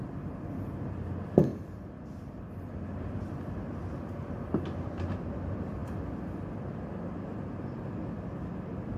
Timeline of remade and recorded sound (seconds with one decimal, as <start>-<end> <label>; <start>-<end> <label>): 0.0-1.5 recorded; 1.5-2.5 remade; 2.5-9.0 recorded